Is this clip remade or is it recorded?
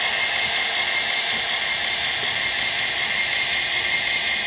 recorded